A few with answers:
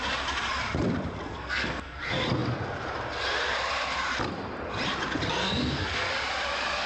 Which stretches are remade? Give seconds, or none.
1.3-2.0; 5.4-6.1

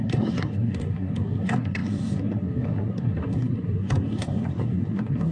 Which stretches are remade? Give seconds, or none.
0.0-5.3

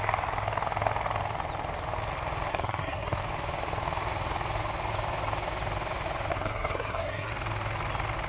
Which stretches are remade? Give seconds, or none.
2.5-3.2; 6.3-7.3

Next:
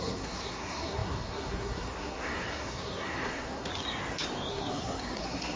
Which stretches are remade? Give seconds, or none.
0.0-3.7; 4.5-5.6

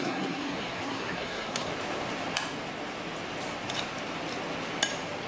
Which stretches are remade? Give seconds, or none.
0.0-1.7